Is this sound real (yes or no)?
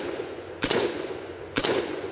no